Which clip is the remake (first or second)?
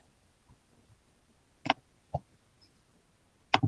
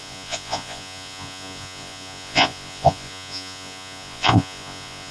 second